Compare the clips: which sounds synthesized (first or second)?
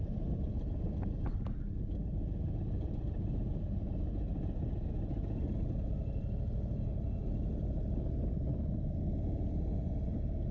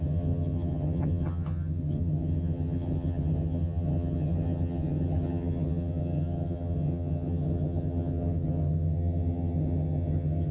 second